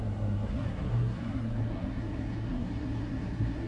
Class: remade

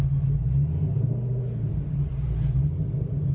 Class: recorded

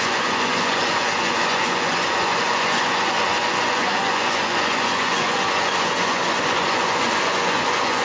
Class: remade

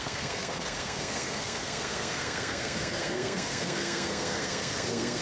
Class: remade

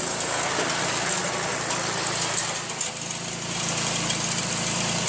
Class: recorded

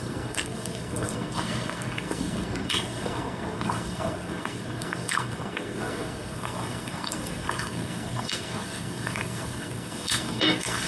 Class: remade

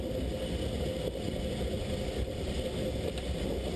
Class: recorded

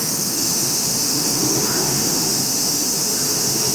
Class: remade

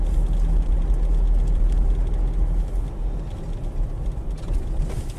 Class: recorded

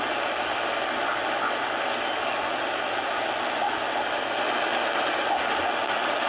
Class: recorded